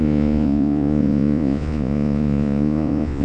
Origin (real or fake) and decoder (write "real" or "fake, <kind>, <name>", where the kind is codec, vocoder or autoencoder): fake, vocoder, Vocos